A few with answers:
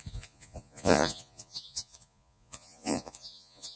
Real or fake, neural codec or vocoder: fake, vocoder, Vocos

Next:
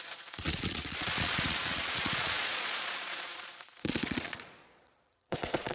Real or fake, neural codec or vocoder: fake, vocoder, Vocos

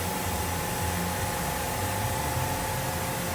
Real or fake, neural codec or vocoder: real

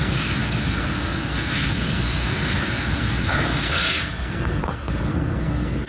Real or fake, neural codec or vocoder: fake, codec, SNAC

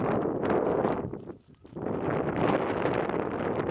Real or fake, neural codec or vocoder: real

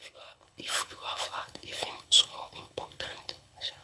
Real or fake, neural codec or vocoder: fake, codec, HILCodec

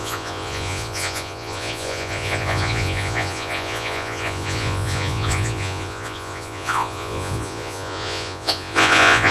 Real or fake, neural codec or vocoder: fake, vocoder, Vocos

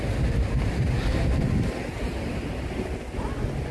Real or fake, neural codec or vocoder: real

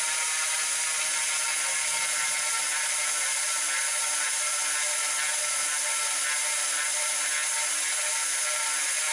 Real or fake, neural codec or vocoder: real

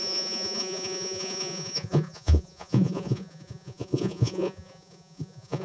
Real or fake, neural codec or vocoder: fake, vocoder, Vocos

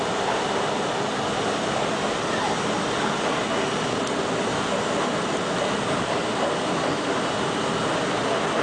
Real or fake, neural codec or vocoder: real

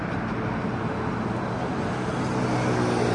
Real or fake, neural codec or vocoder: real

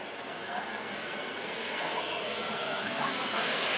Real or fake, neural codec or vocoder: fake, codec, SNAC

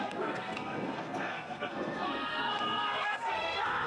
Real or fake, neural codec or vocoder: fake, codec, SNAC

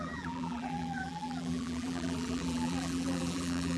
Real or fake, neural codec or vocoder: fake, vocoder, BigVGAN v2